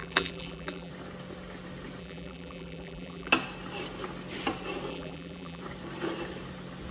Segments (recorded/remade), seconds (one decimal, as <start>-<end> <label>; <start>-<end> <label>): 0.0-0.9 remade; 0.9-2.0 recorded; 2.0-3.3 remade; 3.3-4.9 recorded; 4.9-5.6 remade; 5.6-6.9 recorded